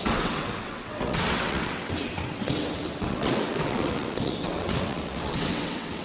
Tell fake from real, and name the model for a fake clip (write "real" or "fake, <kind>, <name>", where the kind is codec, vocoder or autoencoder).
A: fake, vocoder, WaveNeXt